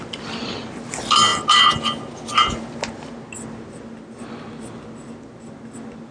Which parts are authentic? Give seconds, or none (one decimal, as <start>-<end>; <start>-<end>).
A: 0.0-6.1